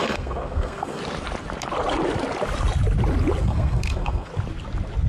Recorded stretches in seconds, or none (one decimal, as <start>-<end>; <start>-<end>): 1.0-3.4; 4.3-5.1